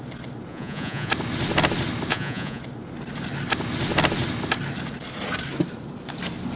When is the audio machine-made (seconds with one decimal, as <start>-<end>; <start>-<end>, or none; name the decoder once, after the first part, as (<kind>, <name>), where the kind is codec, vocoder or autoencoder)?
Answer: 0.5-1.1 (vocoder, Vocos); 2.1-2.6